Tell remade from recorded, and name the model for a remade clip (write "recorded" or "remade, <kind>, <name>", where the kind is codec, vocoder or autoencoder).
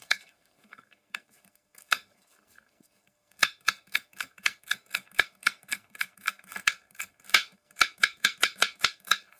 remade, codec, SNAC